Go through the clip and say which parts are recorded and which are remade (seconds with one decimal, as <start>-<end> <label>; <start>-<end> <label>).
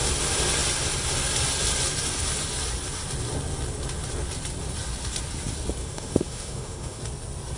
0.0-5.8 recorded; 5.8-7.0 remade; 7.0-7.6 recorded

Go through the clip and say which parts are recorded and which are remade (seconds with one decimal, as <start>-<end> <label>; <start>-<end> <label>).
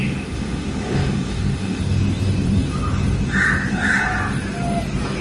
0.0-1.8 remade; 1.8-5.2 recorded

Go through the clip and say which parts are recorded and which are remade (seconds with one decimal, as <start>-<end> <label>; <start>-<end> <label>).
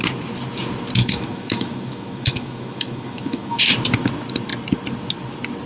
0.0-1.0 recorded; 1.0-3.6 remade; 3.6-5.7 recorded